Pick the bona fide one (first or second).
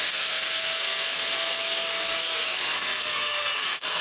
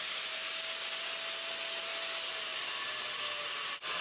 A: second